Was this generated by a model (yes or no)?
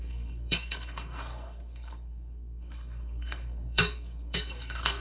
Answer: yes